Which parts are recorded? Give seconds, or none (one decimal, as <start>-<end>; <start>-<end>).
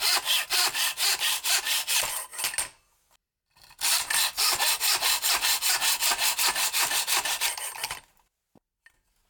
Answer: 0.0-9.3